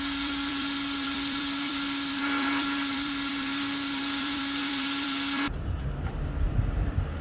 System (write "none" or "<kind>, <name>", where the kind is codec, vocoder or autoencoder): vocoder, BigVGAN v2